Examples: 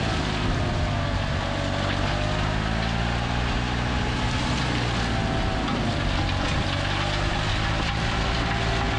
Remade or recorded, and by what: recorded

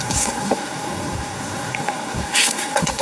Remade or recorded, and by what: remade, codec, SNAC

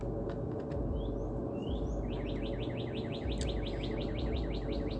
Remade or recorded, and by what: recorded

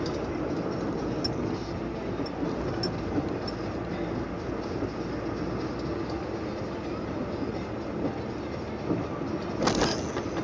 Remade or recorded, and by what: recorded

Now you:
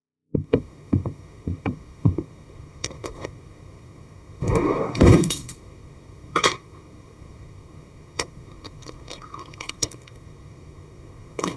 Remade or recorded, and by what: remade, codec, SNAC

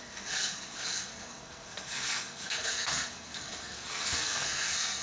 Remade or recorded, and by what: remade, codec, SNAC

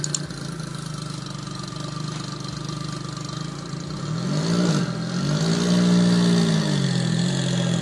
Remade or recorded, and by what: recorded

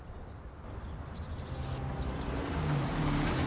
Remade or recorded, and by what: recorded